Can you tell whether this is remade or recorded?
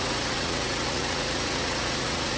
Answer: remade